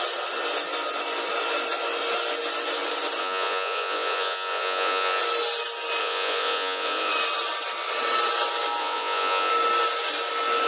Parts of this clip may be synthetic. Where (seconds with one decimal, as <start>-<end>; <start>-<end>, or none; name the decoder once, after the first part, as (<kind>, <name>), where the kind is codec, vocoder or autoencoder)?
3.2-5.2 (vocoder, Vocos); 6.0-7.1; 8.8-9.5

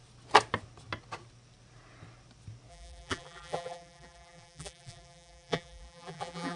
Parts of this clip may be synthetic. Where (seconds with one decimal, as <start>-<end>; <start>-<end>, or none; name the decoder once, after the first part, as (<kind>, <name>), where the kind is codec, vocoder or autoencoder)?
2.7-6.6 (vocoder, BigVGAN v2)

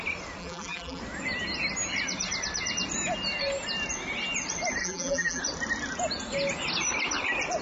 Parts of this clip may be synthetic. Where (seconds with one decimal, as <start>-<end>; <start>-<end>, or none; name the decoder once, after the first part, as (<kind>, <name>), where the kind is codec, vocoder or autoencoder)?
0.4-1.0 (vocoder, BigVGAN v2); 4.8-5.4

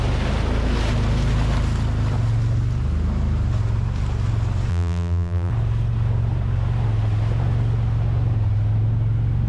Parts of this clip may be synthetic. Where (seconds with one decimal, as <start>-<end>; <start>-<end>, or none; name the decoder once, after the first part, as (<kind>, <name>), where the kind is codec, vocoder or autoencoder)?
4.7-5.5 (vocoder, BigVGAN v2)

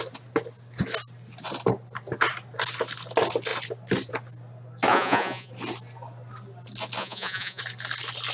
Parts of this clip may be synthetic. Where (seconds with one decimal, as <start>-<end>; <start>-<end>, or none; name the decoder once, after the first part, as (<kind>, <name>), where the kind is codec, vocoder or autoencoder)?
4.9-5.5 (vocoder, Vocos); 7.0-7.6

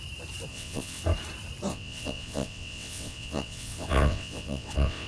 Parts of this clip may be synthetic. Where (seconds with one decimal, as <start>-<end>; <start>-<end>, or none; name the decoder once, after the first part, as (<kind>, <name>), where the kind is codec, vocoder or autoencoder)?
0.5-1.0 (vocoder, WaveNeXt); 1.7-5.1